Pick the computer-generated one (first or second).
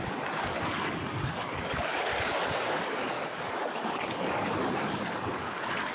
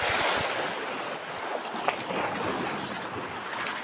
first